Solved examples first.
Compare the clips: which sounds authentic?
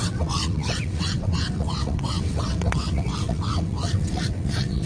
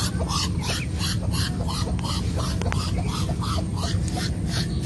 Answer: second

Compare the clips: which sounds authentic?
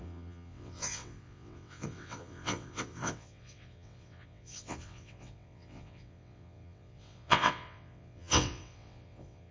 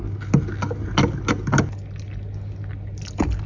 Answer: second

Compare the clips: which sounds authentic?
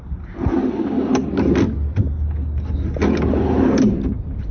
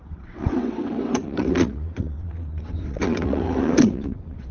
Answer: first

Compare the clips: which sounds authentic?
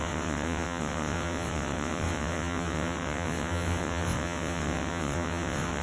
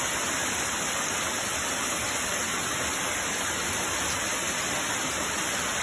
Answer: second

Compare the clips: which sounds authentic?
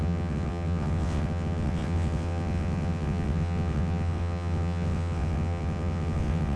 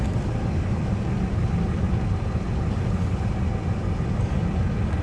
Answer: second